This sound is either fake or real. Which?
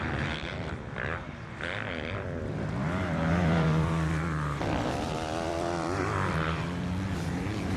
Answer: fake